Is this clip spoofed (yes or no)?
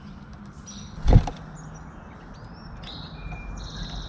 no